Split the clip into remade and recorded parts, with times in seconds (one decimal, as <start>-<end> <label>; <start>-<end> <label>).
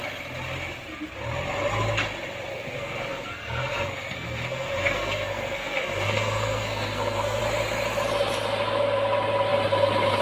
0.0-2.5 recorded; 2.5-7.4 remade; 7.4-10.2 recorded